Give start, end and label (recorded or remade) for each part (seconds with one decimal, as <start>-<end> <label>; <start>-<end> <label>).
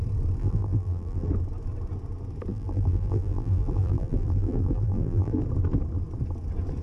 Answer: 0.0-0.4 recorded; 0.4-1.3 remade; 1.3-2.5 recorded; 2.5-5.4 remade; 5.4-6.8 recorded